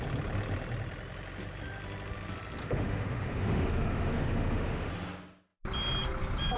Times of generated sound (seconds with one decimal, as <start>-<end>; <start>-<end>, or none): 2.6-4.9